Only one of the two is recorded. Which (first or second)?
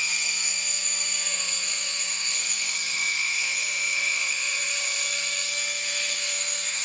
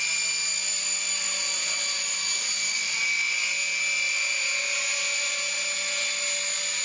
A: second